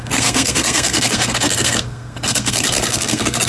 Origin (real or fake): fake